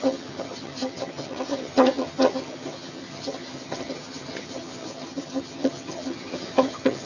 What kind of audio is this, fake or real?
fake